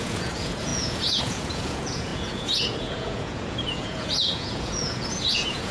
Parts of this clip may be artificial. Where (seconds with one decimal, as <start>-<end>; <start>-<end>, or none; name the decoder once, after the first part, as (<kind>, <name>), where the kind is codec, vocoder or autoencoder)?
0.0-5.7 (vocoder, Vocos)